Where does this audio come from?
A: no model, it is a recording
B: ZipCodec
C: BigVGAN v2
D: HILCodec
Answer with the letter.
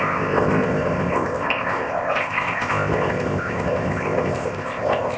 B